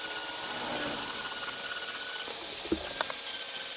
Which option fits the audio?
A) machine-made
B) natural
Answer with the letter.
B